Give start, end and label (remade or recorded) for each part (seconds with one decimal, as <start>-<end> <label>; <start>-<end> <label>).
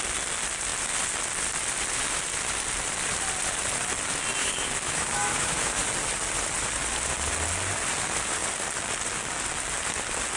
0.0-4.4 recorded; 4.4-5.9 remade; 5.9-10.4 recorded